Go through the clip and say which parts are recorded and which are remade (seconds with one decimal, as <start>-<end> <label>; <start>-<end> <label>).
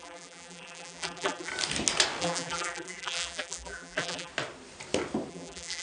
0.0-1.5 remade; 1.5-2.2 recorded; 2.2-4.3 remade; 4.3-5.3 recorded; 5.3-5.8 remade